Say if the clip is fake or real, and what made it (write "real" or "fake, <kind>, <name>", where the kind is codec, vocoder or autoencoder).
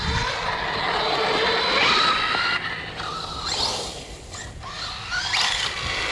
real